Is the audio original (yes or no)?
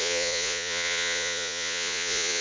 no